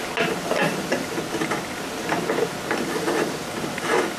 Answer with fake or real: real